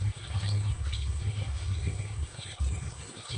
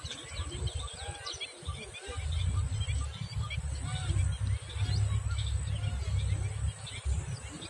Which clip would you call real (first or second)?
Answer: second